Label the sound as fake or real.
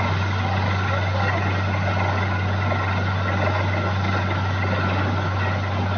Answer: real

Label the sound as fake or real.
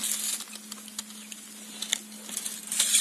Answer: real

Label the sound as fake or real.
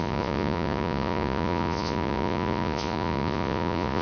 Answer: fake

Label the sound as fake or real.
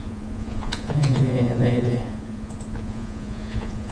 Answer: fake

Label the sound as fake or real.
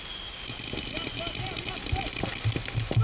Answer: real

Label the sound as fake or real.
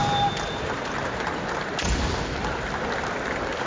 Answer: real